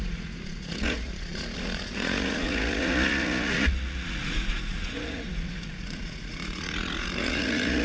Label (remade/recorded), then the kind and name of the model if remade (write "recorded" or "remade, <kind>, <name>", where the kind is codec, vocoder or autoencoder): remade, vocoder, Vocos